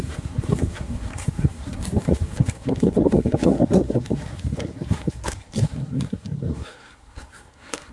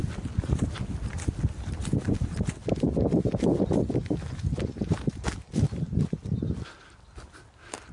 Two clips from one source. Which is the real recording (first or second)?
second